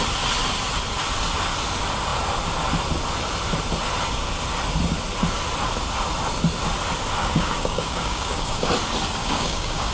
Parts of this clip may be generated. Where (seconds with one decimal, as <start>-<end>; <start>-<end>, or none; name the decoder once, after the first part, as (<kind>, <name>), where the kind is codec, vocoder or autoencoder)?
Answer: 7.2-8.7 (codec, DAC); 9.2-9.9